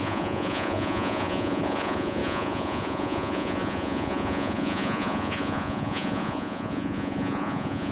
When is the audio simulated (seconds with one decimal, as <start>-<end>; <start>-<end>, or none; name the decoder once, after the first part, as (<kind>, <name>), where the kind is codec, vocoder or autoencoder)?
0.0-7.9 (vocoder, Vocos)